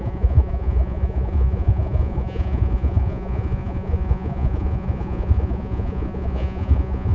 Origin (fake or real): fake